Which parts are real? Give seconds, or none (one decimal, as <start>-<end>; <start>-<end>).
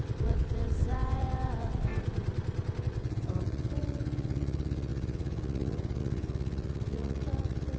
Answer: 1.9-2.8